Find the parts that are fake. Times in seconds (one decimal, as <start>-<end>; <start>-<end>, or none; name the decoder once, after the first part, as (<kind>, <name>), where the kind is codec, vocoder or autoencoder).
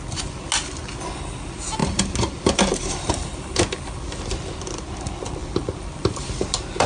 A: 1.8-4.9 (vocoder, BigVGAN v2); 5.4-6.0